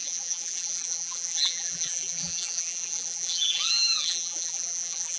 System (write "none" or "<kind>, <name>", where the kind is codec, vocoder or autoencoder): vocoder, BigVGAN v2